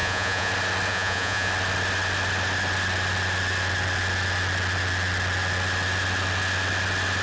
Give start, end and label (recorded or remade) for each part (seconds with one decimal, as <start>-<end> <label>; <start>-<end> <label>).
0.0-0.5 remade; 0.5-0.9 recorded; 0.9-1.5 remade; 1.5-7.2 recorded